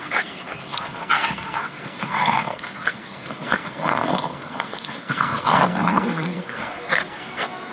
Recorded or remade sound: remade